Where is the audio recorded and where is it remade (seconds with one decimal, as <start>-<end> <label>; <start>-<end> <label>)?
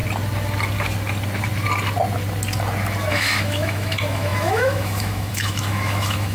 0.0-3.1 recorded; 3.1-6.3 remade